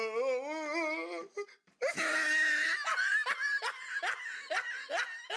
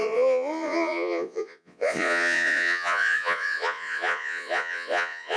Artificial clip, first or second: second